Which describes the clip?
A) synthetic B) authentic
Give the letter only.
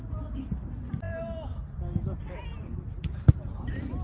B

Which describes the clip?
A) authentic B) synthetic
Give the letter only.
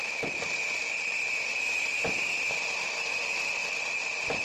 A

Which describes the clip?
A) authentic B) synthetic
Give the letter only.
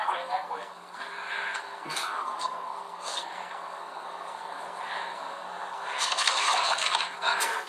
B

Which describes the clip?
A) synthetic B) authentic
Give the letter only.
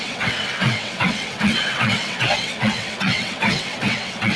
A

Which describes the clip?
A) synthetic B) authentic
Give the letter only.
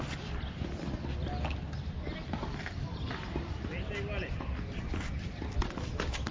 B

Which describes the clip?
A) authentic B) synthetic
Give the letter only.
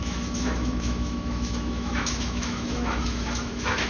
B